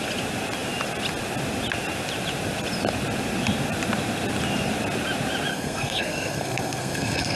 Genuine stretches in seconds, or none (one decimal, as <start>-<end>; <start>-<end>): 0.0-5.5